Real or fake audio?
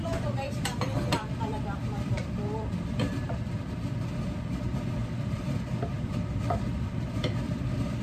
fake